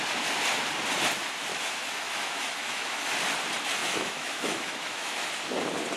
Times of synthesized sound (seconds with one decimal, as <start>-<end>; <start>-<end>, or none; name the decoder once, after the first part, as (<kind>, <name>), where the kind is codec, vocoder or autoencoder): 1.5-3.1 (autoencoder, DAC-VAE); 3.8-5.3